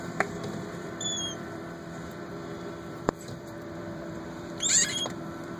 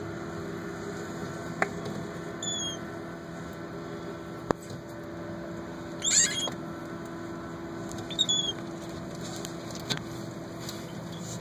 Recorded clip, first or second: second